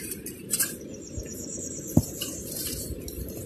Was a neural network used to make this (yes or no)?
yes